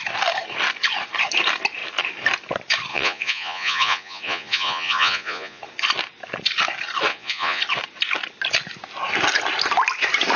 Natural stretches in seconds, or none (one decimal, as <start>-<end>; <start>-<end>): 0.0-2.9; 5.6-7.1; 7.6-10.4

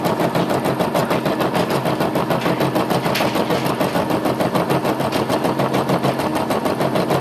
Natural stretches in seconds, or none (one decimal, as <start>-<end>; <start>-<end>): 0.0-7.2

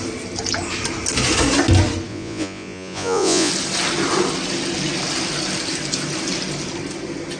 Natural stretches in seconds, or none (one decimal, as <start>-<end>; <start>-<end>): 0.0-2.1; 3.5-7.4

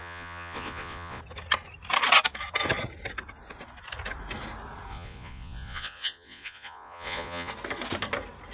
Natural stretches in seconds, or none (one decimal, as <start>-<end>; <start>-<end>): 1.2-4.9; 7.5-8.5